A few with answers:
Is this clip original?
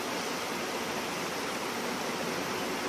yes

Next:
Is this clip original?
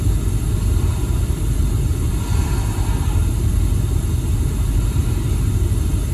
yes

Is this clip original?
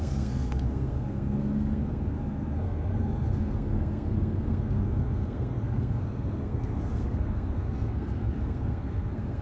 no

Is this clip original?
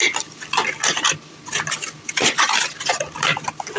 yes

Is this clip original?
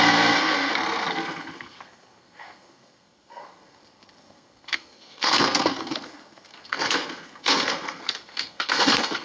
no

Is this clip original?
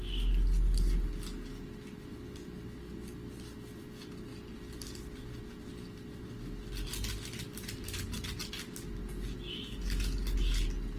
yes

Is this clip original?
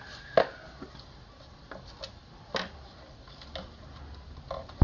yes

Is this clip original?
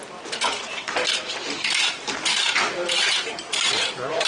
yes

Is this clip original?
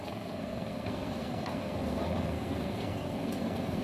no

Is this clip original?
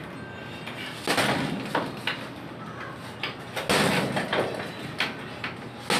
yes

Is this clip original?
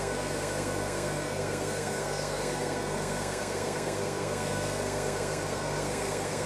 no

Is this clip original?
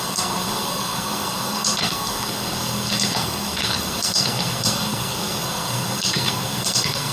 no